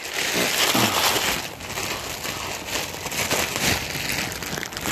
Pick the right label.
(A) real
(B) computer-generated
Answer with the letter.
A